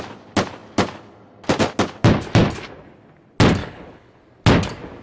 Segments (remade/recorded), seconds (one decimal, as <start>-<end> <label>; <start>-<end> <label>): 0.0-3.6 recorded; 3.6-4.2 remade; 4.2-5.0 recorded